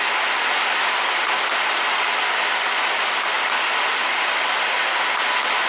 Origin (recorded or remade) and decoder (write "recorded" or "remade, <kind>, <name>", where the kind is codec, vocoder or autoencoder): recorded